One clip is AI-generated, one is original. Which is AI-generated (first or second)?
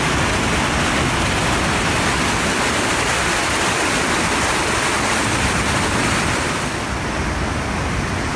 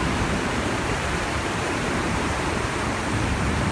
second